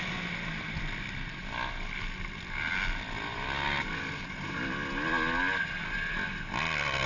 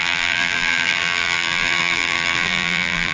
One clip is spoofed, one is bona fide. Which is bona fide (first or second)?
first